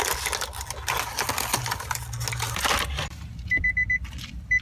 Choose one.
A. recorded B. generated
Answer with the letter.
A